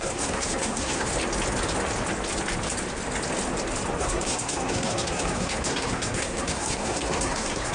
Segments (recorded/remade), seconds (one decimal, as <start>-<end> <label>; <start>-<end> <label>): 0.0-1.1 remade; 1.1-4.0 recorded; 4.0-7.7 remade

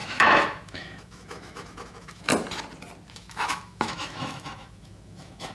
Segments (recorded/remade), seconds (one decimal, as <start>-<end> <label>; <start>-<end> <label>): 0.0-2.3 remade; 2.3-3.1 recorded; 3.1-5.5 remade

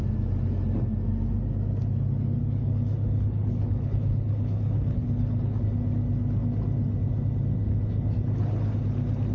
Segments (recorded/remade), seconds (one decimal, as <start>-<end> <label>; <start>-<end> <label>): 0.0-2.4 recorded; 2.4-5.6 remade; 5.6-9.3 recorded

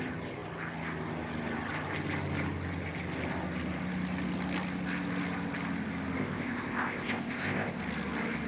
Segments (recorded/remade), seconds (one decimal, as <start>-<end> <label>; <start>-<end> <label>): 0.0-6.2 recorded; 6.2-7.8 remade; 7.8-8.5 recorded